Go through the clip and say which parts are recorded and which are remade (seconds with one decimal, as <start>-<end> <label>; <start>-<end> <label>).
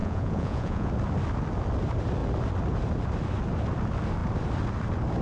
0.0-0.9 remade; 0.9-5.2 recorded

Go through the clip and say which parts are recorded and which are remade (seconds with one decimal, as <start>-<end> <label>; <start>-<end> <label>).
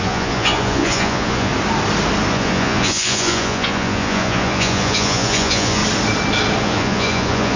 0.0-1.5 remade; 1.5-2.3 recorded; 2.3-5.8 remade; 5.8-6.6 recorded; 6.6-7.6 remade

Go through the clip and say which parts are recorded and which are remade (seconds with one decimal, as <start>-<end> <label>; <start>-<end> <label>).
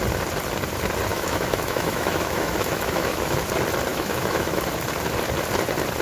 0.0-1.1 recorded; 1.1-3.5 remade; 3.5-3.9 recorded; 3.9-4.6 remade; 4.6-6.0 recorded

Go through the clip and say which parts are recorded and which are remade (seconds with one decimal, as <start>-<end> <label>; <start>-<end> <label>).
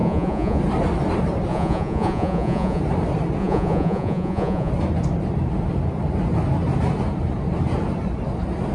0.0-0.6 remade; 0.6-1.5 recorded; 1.5-2.8 remade; 2.8-3.4 recorded; 3.4-4.7 remade; 4.7-8.7 recorded